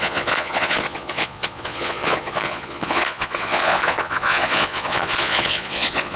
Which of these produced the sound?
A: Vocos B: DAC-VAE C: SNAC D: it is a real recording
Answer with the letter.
A